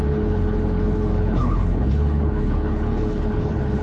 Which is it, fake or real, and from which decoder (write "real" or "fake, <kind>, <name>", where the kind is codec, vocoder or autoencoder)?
fake, codec, HILCodec